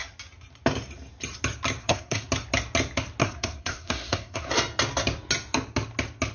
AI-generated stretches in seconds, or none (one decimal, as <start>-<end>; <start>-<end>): 1.8-2.3; 3.2-4.5